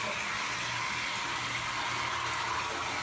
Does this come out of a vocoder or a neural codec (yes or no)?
no